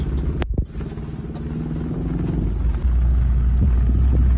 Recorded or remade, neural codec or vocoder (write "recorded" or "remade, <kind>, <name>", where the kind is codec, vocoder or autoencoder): recorded